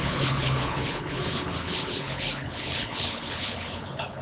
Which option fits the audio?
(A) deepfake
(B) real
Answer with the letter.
A